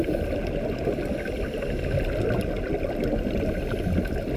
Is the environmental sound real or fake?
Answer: real